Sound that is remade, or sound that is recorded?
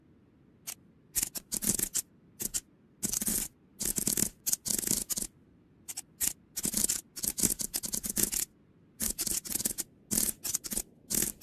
recorded